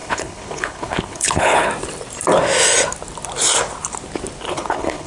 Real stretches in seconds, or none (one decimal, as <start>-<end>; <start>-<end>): 1.7-4.5